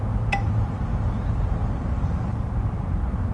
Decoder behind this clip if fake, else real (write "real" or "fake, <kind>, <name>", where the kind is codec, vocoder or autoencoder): real